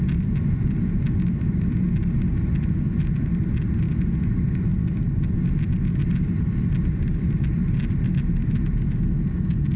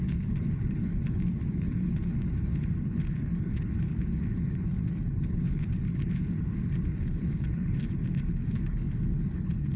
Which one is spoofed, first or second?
second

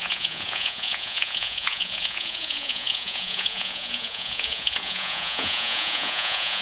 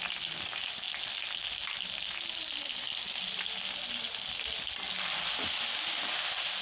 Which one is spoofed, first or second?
first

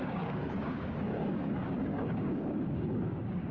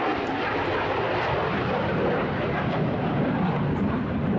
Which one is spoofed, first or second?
first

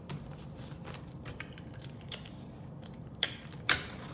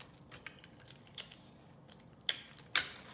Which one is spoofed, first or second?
first